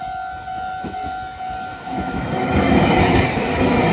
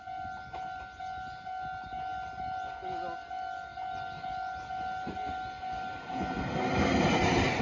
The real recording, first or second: second